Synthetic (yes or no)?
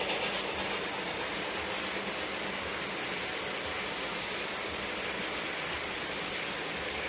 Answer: no